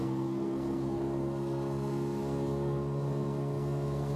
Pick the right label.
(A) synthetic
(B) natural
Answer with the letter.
A